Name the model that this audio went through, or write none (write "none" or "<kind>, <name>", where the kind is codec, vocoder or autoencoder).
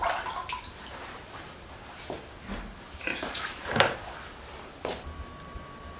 none